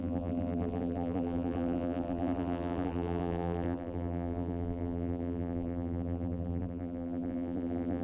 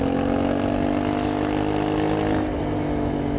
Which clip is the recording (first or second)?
second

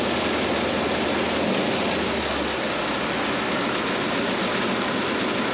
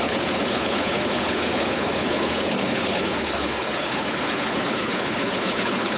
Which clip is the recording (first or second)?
first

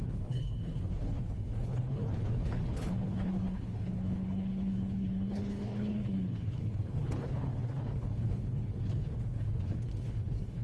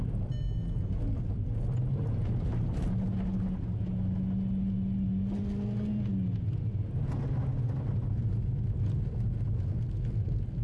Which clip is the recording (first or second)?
second